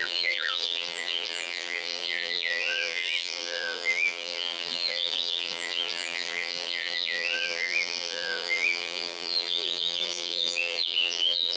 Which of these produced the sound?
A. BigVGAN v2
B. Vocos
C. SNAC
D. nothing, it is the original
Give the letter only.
A